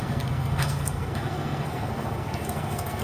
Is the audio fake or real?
fake